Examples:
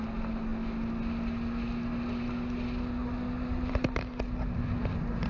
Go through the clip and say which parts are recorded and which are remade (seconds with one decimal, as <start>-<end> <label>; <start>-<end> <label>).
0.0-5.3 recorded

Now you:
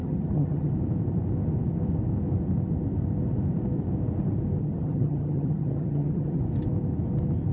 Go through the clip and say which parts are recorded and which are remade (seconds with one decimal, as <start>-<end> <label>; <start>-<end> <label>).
0.0-0.7 remade; 0.7-4.6 recorded; 4.6-6.4 remade; 6.4-7.5 recorded

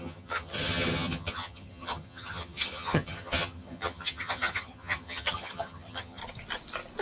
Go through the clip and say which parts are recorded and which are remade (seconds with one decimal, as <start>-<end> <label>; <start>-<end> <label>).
0.0-6.2 remade; 6.2-7.0 recorded

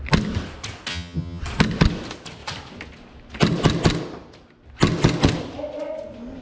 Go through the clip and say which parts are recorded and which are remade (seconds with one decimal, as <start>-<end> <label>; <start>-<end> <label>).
0.0-0.9 recorded; 0.9-1.4 remade; 1.4-6.4 recorded